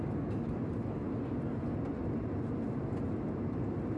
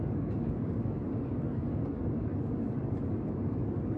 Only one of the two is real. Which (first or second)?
first